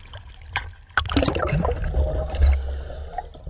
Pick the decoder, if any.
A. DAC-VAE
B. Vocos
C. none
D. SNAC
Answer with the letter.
C